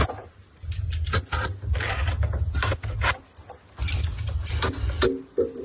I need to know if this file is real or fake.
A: real